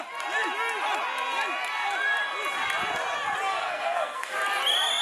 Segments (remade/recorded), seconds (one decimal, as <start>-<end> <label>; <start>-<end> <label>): 0.0-3.5 recorded; 3.5-4.3 remade; 4.3-5.0 recorded